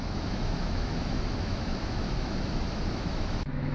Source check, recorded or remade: remade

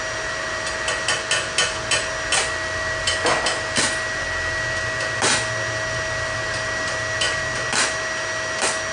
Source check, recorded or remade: recorded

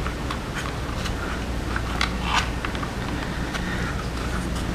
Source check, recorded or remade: recorded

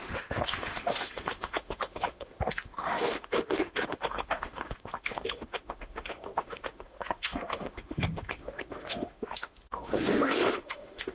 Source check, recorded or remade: remade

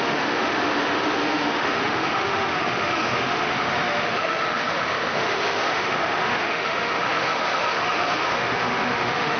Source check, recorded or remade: remade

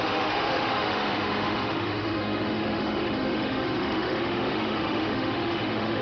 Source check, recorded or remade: remade